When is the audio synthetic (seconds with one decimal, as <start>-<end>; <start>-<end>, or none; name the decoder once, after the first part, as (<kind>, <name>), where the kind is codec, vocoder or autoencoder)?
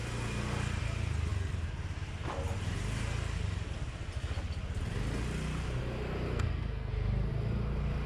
6.3-6.9 (codec, SNAC)